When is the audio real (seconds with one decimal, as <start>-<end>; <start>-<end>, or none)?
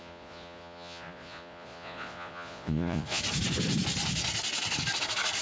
3.2-5.4